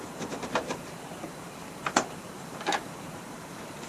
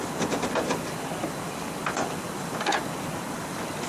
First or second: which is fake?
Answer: first